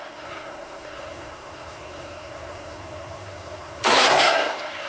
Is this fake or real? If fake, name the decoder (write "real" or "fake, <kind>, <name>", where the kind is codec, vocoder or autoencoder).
fake, codec, SNAC